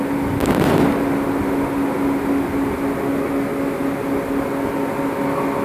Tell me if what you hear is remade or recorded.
recorded